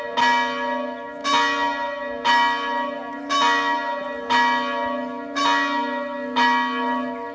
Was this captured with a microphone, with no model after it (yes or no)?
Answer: yes